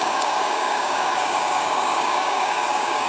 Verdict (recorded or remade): remade